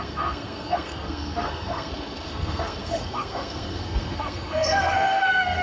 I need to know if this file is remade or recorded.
remade